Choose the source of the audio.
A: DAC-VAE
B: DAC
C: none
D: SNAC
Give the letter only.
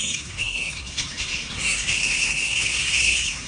D